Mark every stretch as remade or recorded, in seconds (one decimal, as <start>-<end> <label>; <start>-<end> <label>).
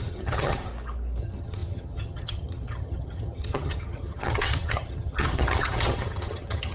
0.0-0.7 remade; 0.7-1.2 recorded; 1.2-6.7 remade